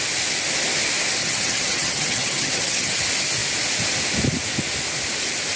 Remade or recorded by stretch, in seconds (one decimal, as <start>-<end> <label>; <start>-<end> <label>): 0.0-1.2 recorded; 1.2-3.0 remade; 3.0-5.6 recorded